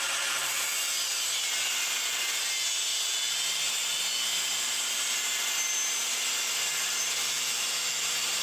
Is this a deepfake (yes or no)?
no